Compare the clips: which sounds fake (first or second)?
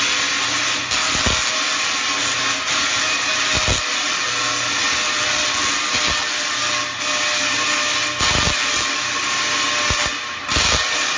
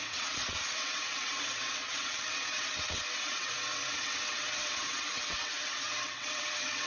second